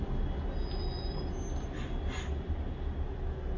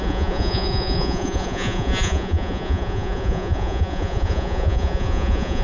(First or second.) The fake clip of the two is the second